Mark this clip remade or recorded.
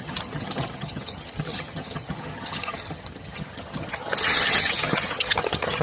remade